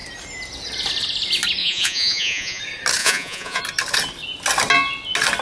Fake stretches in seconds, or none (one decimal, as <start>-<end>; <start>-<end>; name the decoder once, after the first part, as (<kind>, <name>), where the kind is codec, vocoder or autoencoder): 1.6-2.6 (vocoder, Vocos); 3.0-3.6